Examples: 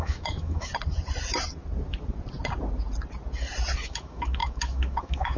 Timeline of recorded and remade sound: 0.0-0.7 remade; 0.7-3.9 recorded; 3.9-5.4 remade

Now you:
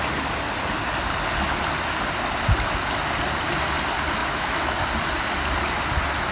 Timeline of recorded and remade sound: 0.0-4.2 recorded; 4.2-4.8 remade; 4.8-6.3 recorded

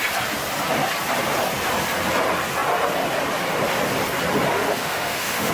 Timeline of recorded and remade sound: 0.0-4.5 recorded; 4.5-5.5 remade

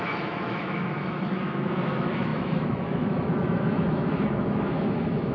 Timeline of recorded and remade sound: 0.0-5.3 remade

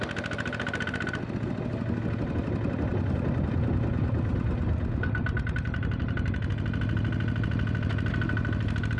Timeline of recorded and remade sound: 0.0-9.0 recorded

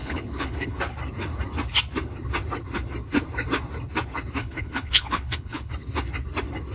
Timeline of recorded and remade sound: 0.0-0.8 remade; 0.8-4.4 recorded; 4.4-5.7 remade; 5.7-6.7 recorded